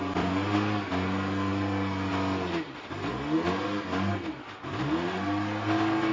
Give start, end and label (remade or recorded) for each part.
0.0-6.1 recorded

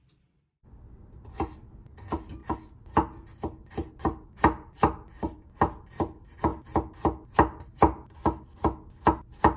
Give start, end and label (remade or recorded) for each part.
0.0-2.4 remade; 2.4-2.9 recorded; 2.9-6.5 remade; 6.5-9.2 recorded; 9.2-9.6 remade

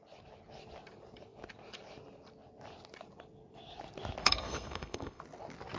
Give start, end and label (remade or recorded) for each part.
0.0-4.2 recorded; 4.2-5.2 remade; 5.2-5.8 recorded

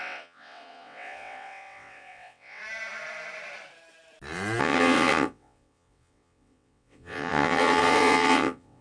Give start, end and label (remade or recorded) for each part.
0.0-2.6 remade; 2.6-4.6 recorded; 4.6-8.8 remade